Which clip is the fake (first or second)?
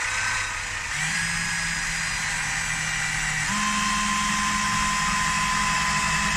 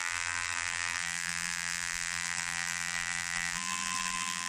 second